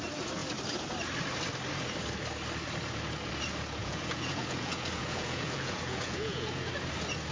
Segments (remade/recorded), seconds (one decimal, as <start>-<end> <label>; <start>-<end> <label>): 0.0-3.8 recorded; 3.8-6.7 remade; 6.7-7.3 recorded